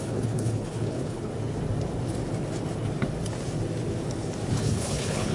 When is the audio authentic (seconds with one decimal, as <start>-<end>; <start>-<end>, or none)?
1.3-4.5